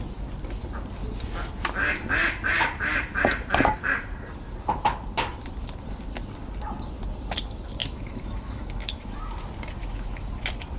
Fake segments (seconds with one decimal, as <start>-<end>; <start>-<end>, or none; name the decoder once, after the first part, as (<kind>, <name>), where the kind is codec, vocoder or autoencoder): 7.8-9.2 (autoencoder, DAC-VAE); 9.8-10.3